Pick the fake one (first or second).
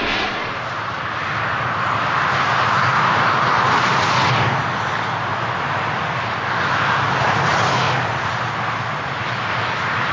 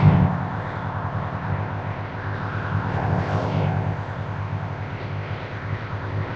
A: second